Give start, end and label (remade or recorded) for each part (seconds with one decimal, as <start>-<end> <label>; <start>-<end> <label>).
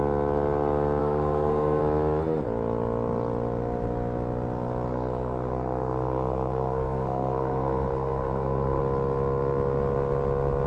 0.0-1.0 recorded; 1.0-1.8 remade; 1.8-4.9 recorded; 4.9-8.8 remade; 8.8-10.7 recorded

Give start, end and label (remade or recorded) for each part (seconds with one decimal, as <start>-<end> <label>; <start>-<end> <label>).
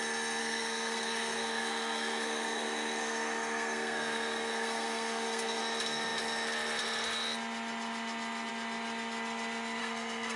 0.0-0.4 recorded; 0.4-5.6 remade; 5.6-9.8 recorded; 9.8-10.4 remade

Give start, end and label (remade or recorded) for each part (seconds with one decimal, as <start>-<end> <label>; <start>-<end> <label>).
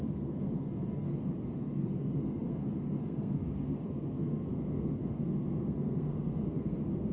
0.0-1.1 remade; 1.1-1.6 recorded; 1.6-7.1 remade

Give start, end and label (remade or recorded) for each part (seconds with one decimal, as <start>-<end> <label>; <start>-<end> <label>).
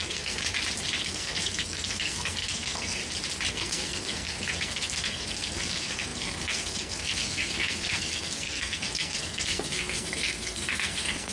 0.0-0.4 remade; 0.4-1.0 recorded; 1.0-3.0 remade; 3.0-3.5 recorded; 3.5-11.3 remade